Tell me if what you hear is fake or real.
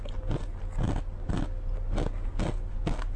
real